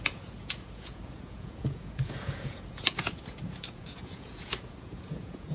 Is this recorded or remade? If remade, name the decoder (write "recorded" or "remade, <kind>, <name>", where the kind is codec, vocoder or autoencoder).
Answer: remade, vocoder, Vocos